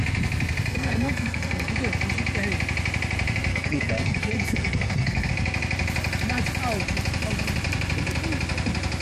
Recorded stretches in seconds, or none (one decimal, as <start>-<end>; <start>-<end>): 0.0-0.7; 1.7-3.5; 5.3-9.0